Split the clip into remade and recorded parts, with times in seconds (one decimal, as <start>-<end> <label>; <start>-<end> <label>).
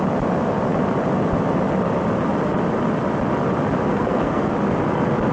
0.0-3.9 recorded; 3.9-4.5 remade; 4.5-5.3 recorded